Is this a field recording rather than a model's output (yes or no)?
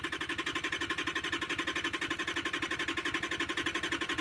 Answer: yes